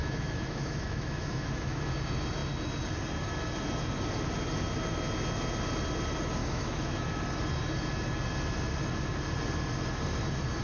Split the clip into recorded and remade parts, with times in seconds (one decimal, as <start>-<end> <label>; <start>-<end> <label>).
0.0-1.8 remade; 1.8-6.4 recorded; 6.4-7.2 remade; 7.2-10.6 recorded